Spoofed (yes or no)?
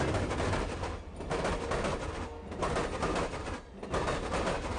no